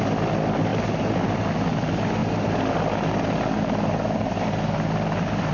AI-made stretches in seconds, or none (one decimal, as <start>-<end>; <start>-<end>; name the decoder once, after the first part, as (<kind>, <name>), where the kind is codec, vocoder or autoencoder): none